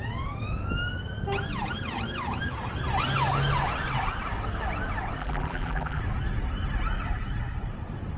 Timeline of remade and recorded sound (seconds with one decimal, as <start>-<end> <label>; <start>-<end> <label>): 0.0-5.2 recorded; 5.2-6.0 remade; 6.0-8.2 recorded